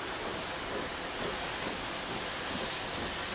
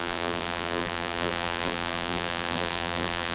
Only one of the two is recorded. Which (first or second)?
first